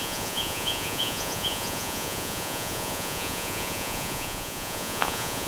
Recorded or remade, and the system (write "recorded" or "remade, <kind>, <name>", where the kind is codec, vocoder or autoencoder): remade, vocoder, Vocos